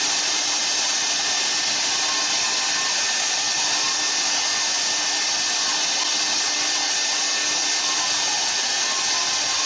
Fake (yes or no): no